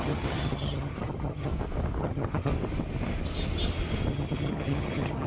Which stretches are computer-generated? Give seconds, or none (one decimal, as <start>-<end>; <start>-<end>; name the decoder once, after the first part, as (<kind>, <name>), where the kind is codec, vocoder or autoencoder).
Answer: 0.0-1.5 (vocoder, HiFi-GAN); 2.0-2.5; 4.1-5.3